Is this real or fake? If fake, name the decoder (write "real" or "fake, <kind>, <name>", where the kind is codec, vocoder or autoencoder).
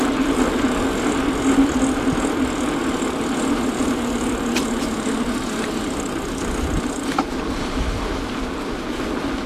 real